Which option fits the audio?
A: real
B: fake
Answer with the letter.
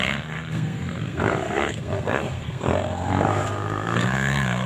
B